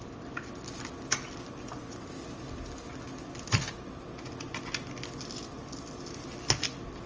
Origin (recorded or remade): recorded